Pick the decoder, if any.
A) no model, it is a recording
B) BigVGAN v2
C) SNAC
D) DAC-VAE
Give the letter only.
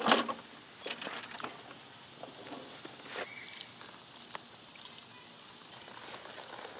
A